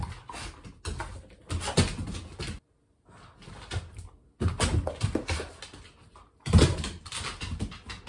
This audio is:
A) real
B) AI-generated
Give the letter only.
A